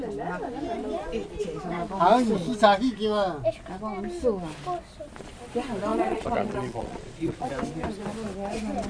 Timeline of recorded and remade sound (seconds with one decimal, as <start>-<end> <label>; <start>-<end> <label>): 0.0-5.9 recorded; 5.9-7.5 remade; 7.5-8.9 recorded